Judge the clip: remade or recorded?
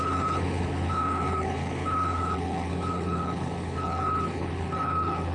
remade